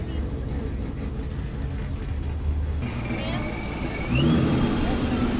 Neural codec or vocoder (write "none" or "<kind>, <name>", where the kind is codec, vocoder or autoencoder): none